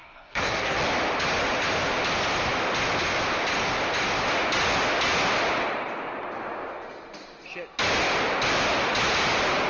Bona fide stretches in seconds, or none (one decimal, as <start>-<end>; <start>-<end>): 0.8-9.7

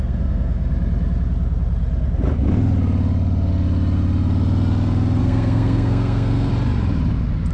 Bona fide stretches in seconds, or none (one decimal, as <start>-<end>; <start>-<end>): 0.7-5.2; 6.5-7.5

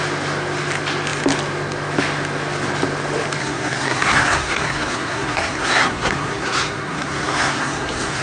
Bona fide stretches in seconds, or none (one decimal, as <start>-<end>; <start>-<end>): 0.0-3.4

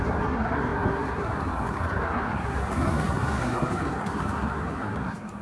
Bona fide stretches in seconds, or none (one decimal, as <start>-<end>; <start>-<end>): none

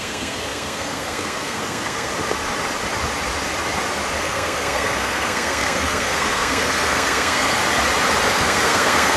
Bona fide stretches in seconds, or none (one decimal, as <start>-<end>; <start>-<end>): 2.1-4.2; 7.6-8.3